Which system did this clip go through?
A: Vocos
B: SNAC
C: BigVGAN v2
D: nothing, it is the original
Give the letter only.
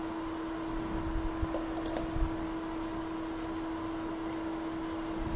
D